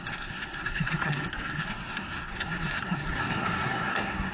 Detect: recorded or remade remade